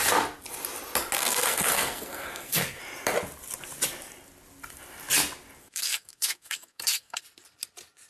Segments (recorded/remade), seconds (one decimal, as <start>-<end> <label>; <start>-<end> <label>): 0.0-1.2 recorded; 1.2-2.8 remade; 2.8-5.6 recorded; 5.6-7.2 remade; 7.2-8.1 recorded

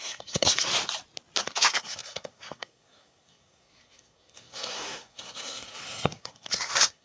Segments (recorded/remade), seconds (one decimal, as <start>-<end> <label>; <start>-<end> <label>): 0.0-0.7 remade; 0.7-1.4 recorded; 1.4-7.0 remade

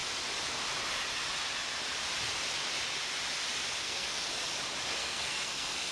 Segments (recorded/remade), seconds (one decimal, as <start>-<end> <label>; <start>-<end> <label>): 0.0-3.8 recorded; 3.8-4.3 remade; 4.3-5.0 recorded; 5.0-5.9 remade

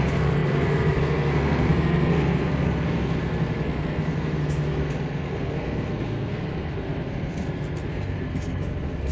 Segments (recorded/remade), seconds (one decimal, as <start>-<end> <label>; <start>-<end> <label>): 0.0-9.1 remade

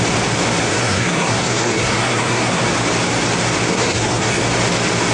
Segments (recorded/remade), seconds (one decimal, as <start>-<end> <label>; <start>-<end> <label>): 0.0-0.7 recorded; 0.7-2.6 remade; 2.6-3.7 recorded; 3.7-4.4 remade; 4.4-5.1 recorded

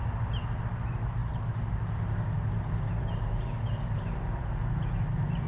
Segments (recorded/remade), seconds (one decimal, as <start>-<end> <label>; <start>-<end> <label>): 0.0-5.5 recorded

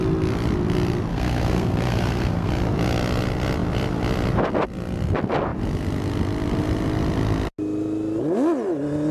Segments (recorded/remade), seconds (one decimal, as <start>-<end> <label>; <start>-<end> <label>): 0.0-1.1 recorded; 1.1-2.5 remade; 2.5-9.1 recorded